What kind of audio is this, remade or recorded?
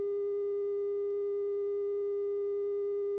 recorded